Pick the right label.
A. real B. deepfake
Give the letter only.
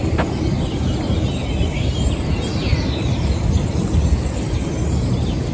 A